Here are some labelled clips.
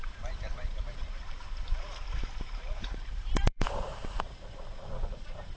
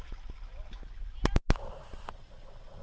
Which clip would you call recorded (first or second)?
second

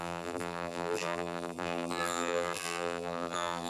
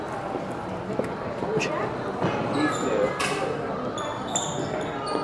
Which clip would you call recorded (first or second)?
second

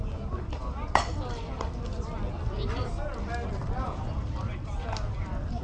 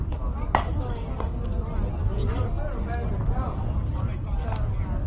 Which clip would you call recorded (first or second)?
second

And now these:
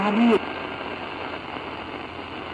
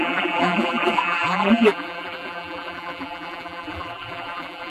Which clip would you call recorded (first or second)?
first